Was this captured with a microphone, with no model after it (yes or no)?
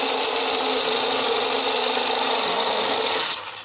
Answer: yes